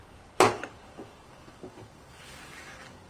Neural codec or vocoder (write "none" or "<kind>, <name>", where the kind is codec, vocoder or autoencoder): codec, DAC